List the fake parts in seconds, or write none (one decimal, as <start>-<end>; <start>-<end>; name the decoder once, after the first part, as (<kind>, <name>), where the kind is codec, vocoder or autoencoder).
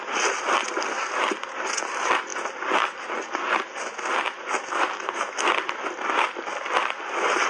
none